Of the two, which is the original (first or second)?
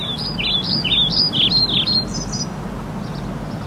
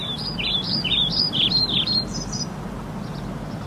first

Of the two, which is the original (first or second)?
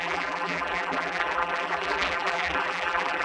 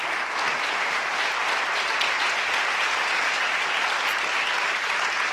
second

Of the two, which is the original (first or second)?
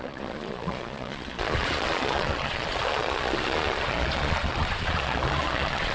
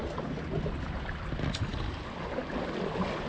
second